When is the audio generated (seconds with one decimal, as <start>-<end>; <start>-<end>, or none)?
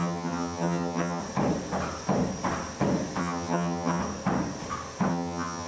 0.0-1.2; 3.2-4.0; 5.1-5.7